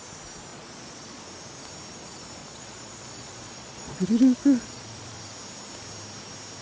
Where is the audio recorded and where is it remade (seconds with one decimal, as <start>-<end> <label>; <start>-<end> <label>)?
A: 0.0-0.5 recorded; 0.5-1.2 remade; 1.2-2.4 recorded; 2.4-5.2 remade; 5.2-6.6 recorded